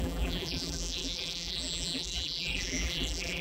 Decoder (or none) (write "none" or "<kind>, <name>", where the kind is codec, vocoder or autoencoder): vocoder, BigVGAN v2